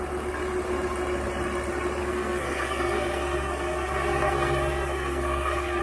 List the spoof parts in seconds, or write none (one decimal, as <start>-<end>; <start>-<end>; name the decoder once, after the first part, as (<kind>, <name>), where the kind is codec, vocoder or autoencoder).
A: 2.0-5.8 (codec, SNAC)